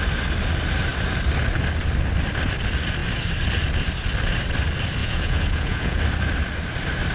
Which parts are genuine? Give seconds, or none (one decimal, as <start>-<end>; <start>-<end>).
0.0-5.0; 6.0-7.1